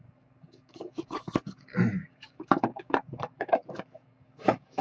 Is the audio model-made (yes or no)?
yes